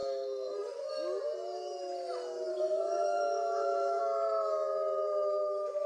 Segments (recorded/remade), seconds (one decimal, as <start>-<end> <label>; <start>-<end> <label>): 0.0-0.9 remade; 0.9-2.5 recorded; 2.5-4.0 remade; 4.0-5.9 recorded